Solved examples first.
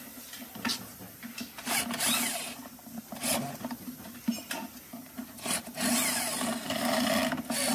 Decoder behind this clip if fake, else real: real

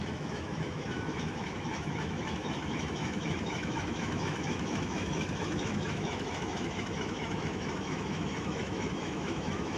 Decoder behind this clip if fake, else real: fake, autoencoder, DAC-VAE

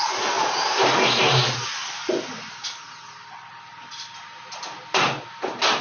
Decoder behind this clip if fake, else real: real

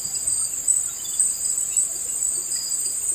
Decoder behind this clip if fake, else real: real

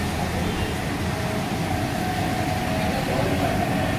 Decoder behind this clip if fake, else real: real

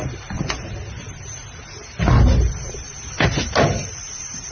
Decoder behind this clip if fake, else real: real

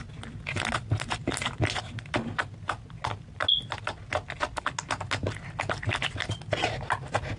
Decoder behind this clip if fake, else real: real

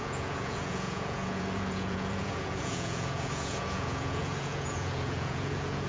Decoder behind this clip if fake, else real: fake, vocoder, Vocos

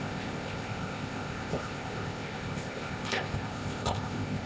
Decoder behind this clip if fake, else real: fake, codec, ZipCodec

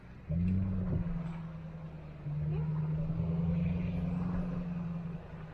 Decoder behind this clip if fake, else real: real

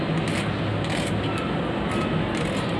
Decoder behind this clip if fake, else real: real